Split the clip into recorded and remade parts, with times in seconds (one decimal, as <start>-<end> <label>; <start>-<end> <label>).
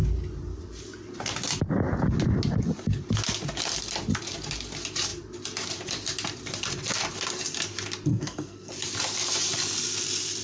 0.0-8.1 recorded; 8.1-8.7 remade; 8.7-10.4 recorded